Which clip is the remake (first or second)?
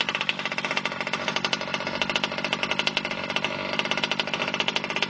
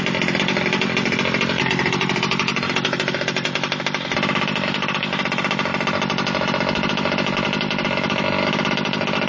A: first